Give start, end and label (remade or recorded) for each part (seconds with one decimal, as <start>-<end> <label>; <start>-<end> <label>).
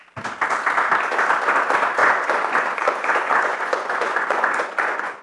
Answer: 0.0-2.0 recorded; 2.0-5.2 remade